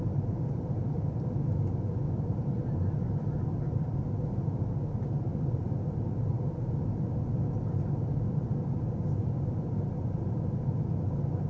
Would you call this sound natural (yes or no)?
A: yes